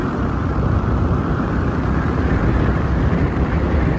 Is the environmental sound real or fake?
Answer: fake